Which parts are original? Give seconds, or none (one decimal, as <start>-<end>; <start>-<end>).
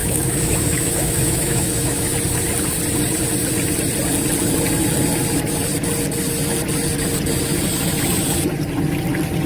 2.1-9.5